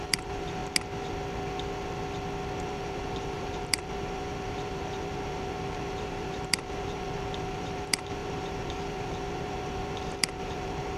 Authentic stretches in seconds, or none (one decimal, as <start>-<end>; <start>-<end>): 0.6-2.6